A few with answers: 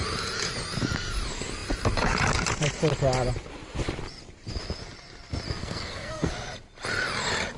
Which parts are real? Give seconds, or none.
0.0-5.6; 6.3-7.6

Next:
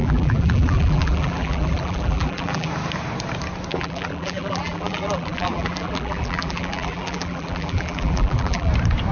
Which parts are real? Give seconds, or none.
2.7-3.7; 8.7-9.1

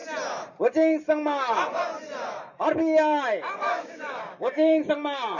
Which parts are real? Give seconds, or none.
0.0-3.7; 4.9-5.4